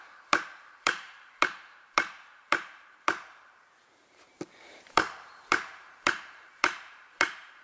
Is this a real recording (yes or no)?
no